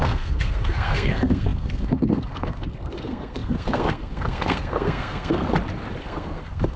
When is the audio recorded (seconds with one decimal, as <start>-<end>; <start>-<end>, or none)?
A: 5.4-6.0